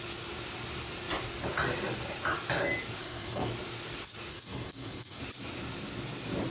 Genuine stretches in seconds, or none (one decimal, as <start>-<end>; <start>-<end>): 0.0-3.0; 3.5-4.3; 5.2-6.5